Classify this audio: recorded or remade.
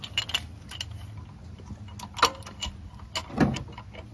recorded